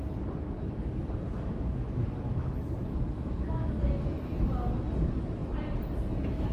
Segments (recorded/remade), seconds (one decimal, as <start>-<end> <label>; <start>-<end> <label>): 0.0-1.3 recorded; 1.3-4.8 remade; 4.8-6.5 recorded